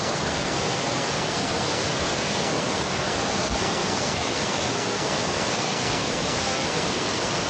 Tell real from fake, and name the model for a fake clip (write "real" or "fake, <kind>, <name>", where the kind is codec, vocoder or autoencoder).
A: fake, codec, SNAC